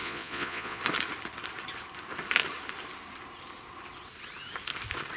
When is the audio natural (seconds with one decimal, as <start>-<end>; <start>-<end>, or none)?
0.8-5.2